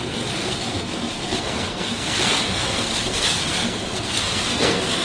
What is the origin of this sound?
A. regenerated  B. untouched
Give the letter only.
A